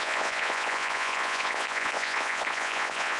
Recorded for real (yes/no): no